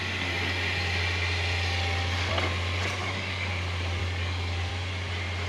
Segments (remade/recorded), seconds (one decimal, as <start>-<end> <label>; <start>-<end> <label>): 0.0-3.0 recorded; 3.0-3.5 remade; 3.5-4.0 recorded; 4.0-4.7 remade; 4.7-5.5 recorded